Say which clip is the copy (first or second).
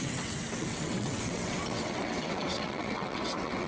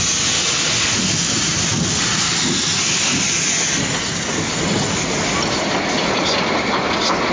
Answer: first